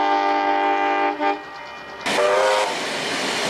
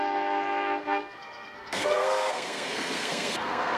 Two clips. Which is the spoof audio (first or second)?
second